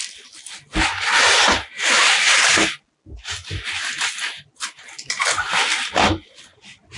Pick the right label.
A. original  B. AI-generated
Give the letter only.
A